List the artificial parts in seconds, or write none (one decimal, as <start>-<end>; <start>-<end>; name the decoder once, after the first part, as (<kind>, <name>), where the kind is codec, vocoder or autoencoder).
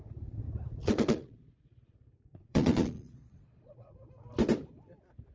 0.8-1.8 (vocoder, Vocos); 2.3-4.0